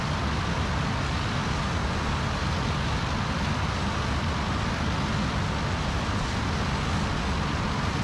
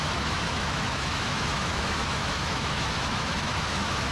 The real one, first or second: first